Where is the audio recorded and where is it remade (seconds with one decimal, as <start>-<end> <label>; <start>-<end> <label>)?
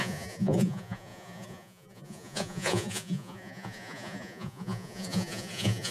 0.0-5.9 remade